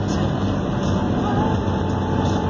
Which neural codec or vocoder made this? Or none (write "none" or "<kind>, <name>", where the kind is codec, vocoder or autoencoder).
none